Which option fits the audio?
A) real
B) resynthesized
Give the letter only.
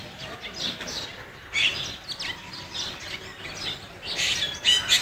A